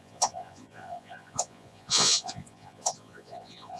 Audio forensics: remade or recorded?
remade